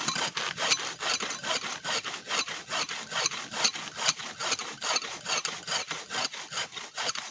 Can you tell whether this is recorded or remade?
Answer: recorded